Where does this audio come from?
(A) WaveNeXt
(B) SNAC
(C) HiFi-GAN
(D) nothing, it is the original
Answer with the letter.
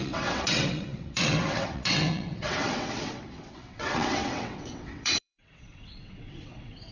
A